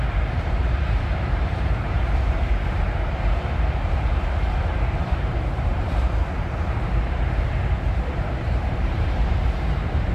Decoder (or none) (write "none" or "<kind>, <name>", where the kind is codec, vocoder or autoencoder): vocoder, BigVGAN v2